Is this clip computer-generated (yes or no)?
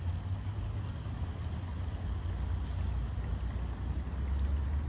no